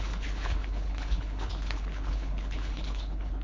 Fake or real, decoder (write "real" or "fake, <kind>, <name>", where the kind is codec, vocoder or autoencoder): fake, codec, HILCodec